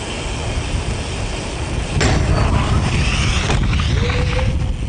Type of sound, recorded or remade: recorded